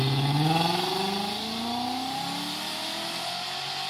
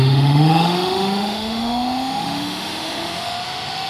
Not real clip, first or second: second